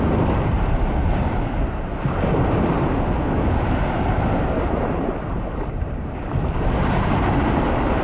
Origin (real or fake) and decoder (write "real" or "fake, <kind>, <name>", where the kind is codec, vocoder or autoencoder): real